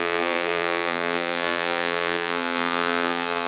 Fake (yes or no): yes